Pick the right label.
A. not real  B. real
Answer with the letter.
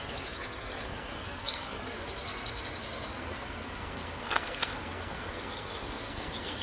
A